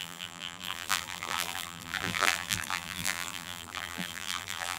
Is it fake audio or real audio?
fake